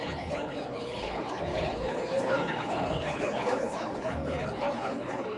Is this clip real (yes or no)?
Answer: no